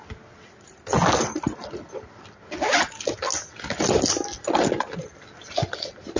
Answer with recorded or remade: recorded